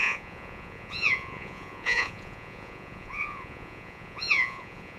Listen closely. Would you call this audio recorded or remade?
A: remade